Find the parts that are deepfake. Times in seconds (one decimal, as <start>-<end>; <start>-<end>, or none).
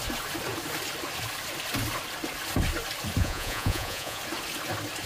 3.2-4.2